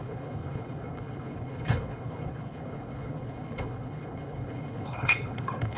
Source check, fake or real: fake